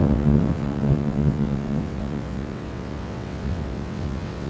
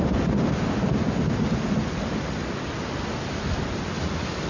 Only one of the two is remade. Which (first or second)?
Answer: first